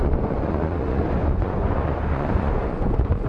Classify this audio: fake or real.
fake